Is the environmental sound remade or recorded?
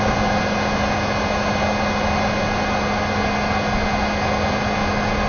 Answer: recorded